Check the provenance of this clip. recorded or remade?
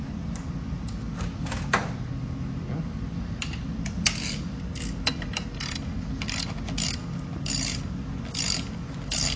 recorded